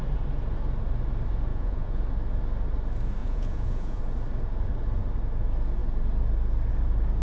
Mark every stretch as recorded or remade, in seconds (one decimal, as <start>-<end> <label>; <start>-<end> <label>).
0.0-1.5 recorded; 1.5-2.0 remade; 2.0-3.2 recorded; 3.2-4.0 remade; 4.0-7.2 recorded